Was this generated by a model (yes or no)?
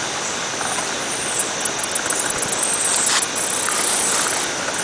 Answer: no